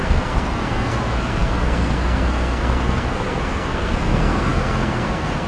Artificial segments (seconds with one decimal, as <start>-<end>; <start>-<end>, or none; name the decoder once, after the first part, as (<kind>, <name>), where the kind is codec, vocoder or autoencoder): 0.0-5.5 (codec, SNAC)